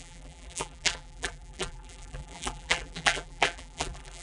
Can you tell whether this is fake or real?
fake